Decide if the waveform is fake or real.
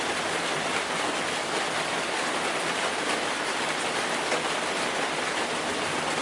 real